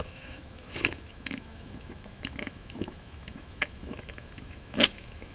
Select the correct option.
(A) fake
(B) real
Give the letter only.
A